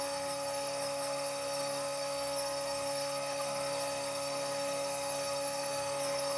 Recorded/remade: remade